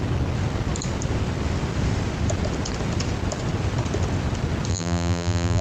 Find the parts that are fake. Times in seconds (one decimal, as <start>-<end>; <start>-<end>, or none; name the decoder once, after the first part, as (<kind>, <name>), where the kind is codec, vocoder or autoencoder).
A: 4.7-5.6 (vocoder, BigVGAN v2)

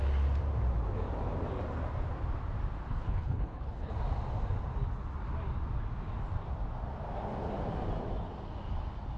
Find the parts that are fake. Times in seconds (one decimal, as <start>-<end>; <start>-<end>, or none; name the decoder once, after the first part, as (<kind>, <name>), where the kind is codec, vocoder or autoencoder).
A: 2.9-3.9 (codec, HILCodec)

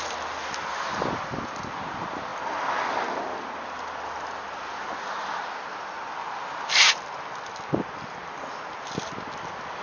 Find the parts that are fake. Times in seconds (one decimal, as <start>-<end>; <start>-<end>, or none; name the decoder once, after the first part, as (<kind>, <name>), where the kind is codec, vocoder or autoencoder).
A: 6.2-7.0 (vocoder, BigVGAN v2)

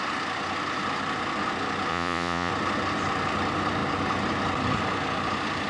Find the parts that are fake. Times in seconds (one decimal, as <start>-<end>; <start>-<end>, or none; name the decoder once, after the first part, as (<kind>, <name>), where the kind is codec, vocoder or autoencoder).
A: 1.9-2.5 (vocoder, Vocos)

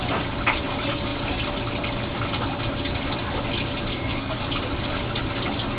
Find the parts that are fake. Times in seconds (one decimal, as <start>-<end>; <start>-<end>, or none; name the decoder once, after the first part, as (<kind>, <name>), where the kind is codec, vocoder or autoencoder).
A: 3.9-4.4 (codec, SNAC)

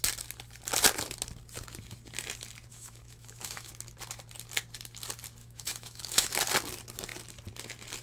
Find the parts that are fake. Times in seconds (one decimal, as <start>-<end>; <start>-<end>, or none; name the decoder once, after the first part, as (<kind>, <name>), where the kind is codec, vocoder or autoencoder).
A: 2.7-3.7 (autoencoder, DAC-VAE); 5.4-6.3

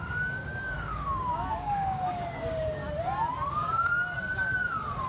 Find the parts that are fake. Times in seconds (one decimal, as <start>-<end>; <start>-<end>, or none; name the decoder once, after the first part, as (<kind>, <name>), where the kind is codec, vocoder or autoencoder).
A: 0.0-2.8 (codec, DAC); 3.5-3.9

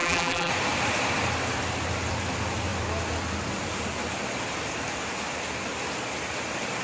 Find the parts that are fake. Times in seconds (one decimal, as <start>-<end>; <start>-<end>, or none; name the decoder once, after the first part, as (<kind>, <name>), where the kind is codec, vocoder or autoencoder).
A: 0.0-0.5 (vocoder, BigVGAN v2)